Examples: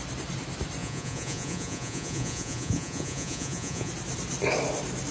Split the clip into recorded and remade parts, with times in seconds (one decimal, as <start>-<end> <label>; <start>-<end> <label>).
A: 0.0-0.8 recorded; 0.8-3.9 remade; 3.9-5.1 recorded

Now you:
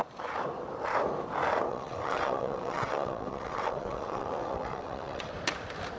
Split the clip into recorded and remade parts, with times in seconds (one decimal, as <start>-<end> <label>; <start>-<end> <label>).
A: 0.0-1.7 recorded; 1.7-5.3 remade; 5.3-6.0 recorded

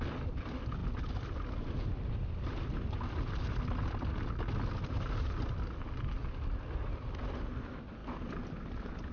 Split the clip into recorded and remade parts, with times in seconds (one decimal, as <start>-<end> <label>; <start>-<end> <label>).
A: 0.0-9.1 recorded

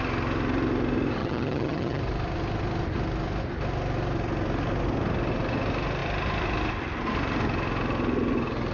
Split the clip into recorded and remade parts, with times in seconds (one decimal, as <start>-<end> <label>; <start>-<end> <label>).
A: 0.0-1.2 recorded; 1.2-2.0 remade; 2.0-8.7 recorded

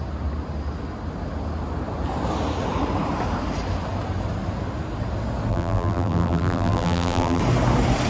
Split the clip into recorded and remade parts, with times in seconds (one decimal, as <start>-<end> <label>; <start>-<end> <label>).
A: 0.0-5.5 recorded; 5.5-7.4 remade; 7.4-8.1 recorded

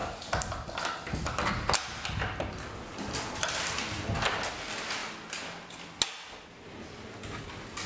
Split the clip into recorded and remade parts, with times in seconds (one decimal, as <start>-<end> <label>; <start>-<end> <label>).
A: 0.0-7.9 recorded

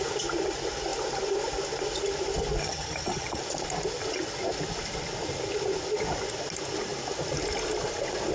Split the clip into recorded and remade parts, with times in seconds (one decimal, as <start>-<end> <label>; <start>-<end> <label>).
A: 0.0-2.6 recorded; 2.6-3.4 remade; 3.4-8.3 recorded